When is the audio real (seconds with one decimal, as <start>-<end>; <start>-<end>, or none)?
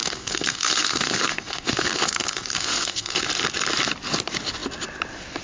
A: 3.2-5.4